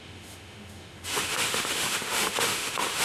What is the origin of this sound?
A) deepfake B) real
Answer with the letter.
A